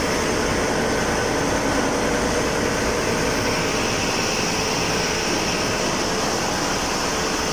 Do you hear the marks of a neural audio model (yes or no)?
no